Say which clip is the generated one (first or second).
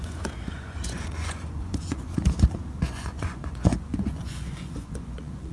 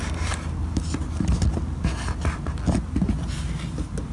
first